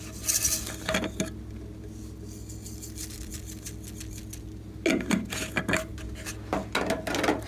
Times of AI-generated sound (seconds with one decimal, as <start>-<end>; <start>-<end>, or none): none